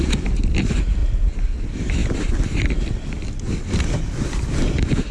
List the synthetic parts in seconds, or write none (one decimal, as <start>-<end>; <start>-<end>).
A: 0.0-1.0; 1.6-5.1